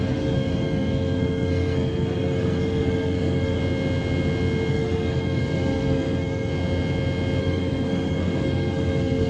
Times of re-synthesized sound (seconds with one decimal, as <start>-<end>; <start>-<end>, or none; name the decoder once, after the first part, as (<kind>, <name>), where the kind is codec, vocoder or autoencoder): 0.0-3.6 (codec, SNAC); 4.7-6.5; 7.4-9.3